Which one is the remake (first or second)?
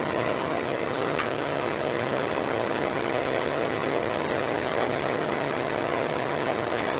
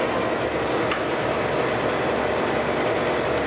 first